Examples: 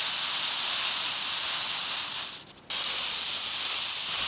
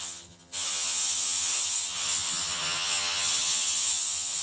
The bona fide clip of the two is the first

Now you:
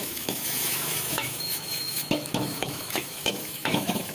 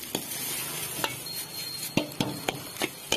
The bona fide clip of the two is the second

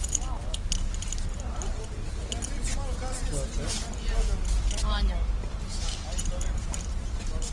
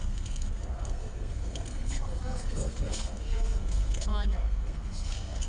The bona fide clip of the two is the first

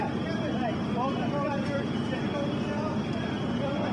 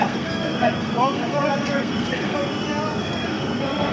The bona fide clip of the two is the first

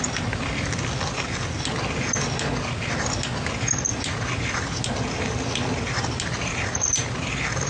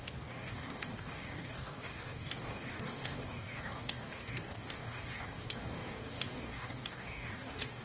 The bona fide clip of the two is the first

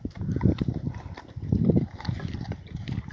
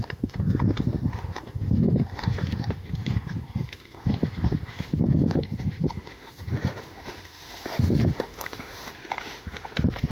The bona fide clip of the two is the first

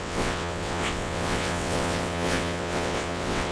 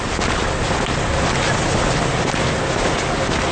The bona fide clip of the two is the second